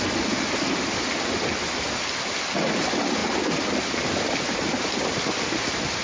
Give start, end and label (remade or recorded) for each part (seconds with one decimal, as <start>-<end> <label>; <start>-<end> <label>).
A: 0.0-6.0 recorded